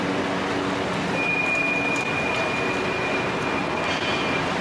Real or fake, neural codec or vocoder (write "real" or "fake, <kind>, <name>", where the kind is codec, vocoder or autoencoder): real